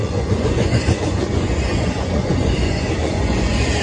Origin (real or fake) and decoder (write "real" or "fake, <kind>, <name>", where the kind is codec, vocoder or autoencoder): fake, vocoder, Vocos